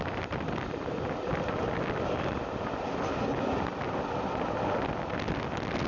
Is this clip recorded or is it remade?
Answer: recorded